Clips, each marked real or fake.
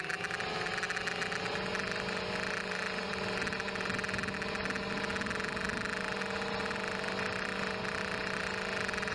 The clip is real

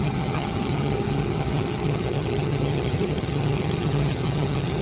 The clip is fake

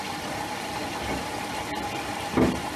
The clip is real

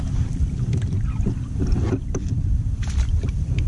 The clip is fake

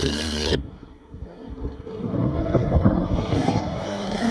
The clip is fake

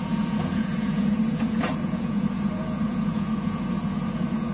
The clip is fake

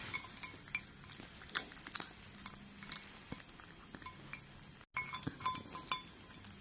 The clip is real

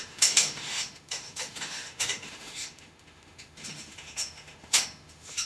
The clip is fake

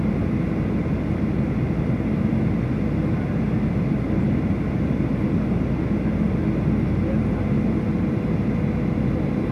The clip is real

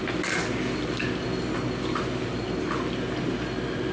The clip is real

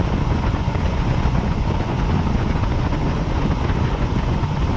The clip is fake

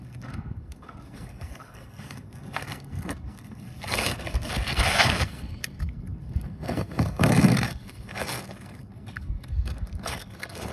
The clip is fake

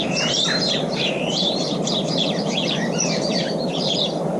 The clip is fake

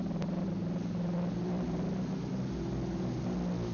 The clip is real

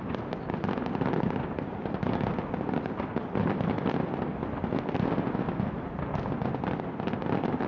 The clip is real